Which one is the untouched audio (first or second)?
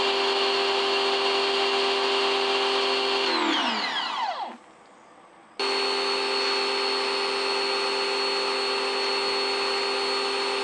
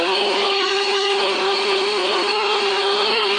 first